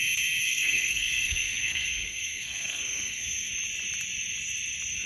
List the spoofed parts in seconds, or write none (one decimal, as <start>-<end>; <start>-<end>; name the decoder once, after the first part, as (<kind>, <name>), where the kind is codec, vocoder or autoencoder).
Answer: 0.4-3.5 (codec, SNAC)